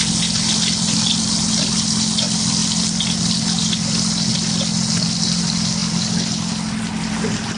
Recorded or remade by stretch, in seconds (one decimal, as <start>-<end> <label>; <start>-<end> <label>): 0.0-7.6 recorded